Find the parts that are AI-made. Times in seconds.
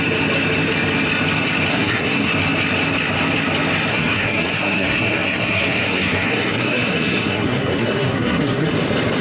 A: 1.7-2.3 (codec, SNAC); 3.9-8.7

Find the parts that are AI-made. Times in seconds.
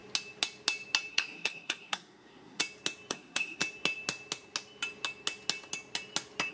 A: 1.1-2.6 (codec, SNAC); 3.1-3.6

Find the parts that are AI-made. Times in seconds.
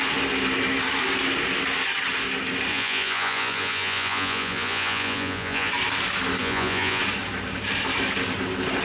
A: 2.7-5.7 (vocoder, Vocos); 6.4-7.0